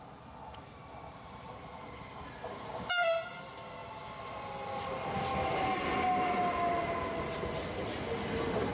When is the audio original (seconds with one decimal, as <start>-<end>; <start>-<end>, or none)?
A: 0.0-8.7

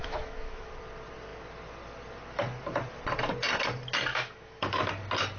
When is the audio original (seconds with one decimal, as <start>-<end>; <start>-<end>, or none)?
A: 0.7-4.1; 4.9-5.4

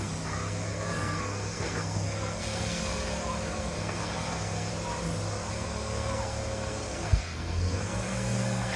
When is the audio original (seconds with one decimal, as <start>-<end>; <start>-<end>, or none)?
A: 4.7-5.5

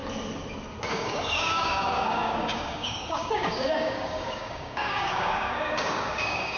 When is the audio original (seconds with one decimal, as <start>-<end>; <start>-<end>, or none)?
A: 0.0-0.9

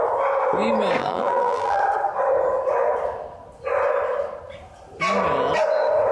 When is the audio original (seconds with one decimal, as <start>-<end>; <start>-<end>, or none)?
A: 0.0-1.0; 1.8-6.1